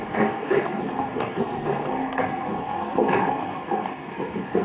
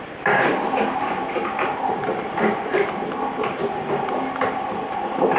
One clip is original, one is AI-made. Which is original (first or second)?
second